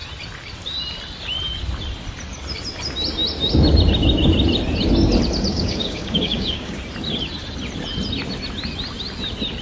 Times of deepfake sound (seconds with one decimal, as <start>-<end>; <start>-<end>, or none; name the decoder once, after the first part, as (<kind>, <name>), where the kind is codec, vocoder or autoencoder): 5.5-6.8 (codec, DAC)